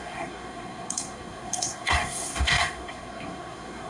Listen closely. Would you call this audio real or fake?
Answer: fake